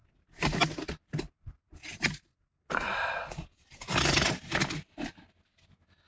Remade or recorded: recorded